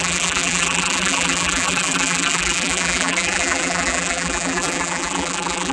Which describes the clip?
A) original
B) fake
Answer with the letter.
B